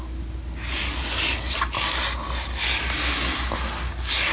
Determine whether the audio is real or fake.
real